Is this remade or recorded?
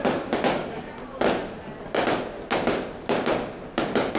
recorded